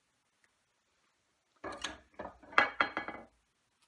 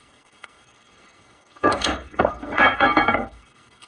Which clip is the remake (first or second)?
second